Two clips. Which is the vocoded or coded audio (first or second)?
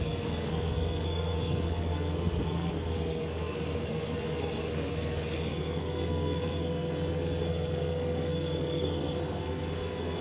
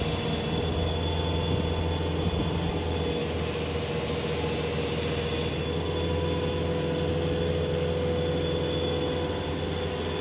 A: first